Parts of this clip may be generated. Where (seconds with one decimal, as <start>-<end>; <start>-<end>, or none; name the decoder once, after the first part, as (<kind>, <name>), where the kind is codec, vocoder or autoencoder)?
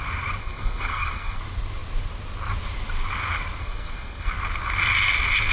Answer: 0.4-1.4 (codec, SNAC); 3.6-4.3